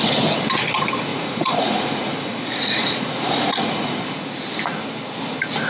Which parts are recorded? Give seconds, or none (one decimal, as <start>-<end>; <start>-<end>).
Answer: 0.0-1.1; 4.0-5.7